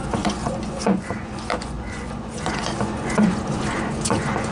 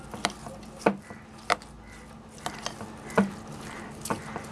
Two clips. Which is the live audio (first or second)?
second